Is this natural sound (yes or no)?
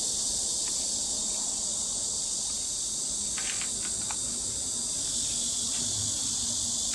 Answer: yes